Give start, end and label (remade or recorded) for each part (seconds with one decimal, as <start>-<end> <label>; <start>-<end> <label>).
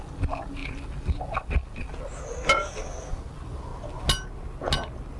0.0-1.9 remade; 1.9-3.1 recorded; 3.1-3.7 remade; 3.7-5.2 recorded